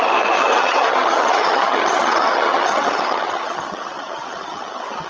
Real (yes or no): no